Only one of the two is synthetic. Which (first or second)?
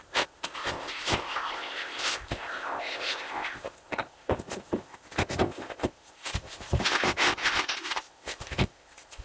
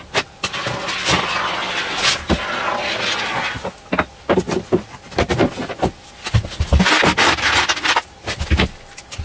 first